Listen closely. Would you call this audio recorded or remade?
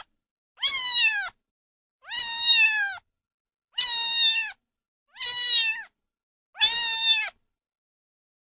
recorded